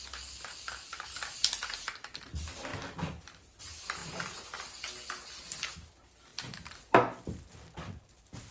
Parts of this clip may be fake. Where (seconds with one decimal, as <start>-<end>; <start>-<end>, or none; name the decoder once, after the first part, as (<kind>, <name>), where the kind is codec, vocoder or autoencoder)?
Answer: none